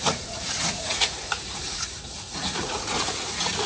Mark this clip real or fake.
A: fake